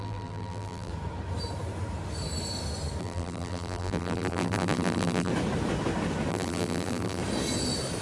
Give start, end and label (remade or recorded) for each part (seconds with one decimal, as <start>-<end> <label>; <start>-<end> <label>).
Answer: 0.0-0.9 remade; 0.9-3.0 recorded; 3.0-5.3 remade; 5.3-6.3 recorded; 6.3-7.2 remade; 7.2-8.0 recorded